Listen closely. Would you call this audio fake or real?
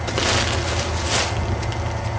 real